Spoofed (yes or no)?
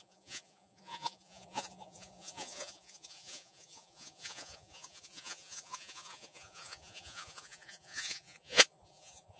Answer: yes